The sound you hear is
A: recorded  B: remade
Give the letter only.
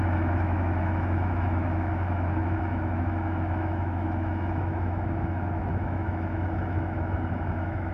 B